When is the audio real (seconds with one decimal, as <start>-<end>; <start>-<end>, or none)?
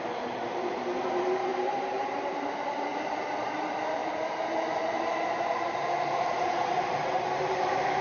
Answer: 4.0-5.3